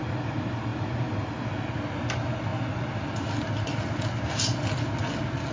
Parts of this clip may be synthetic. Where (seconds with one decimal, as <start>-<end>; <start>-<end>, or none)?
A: none